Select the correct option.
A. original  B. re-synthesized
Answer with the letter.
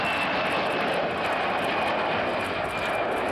A